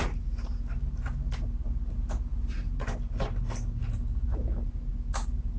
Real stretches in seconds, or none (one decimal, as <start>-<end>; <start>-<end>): 0.0-5.6